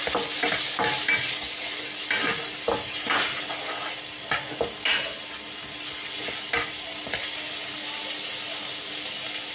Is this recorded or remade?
recorded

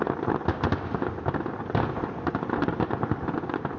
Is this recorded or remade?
recorded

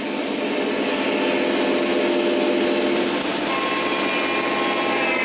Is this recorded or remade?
recorded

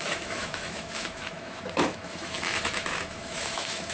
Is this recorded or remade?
remade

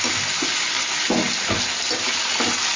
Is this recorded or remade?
recorded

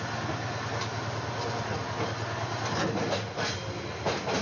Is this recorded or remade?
recorded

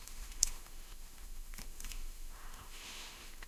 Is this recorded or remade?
remade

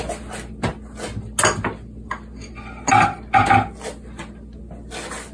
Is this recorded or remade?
recorded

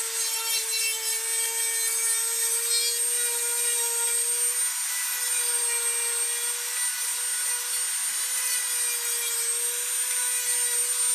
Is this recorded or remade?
recorded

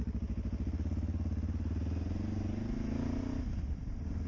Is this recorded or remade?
recorded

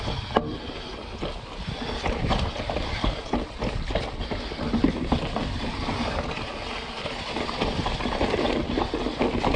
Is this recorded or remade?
recorded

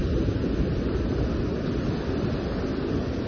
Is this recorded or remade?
recorded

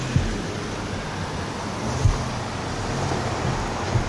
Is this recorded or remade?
recorded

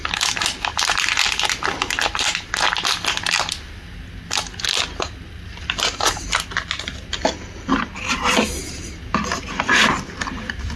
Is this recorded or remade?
recorded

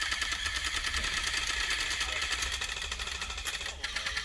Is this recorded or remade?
recorded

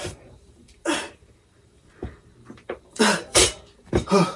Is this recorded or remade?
remade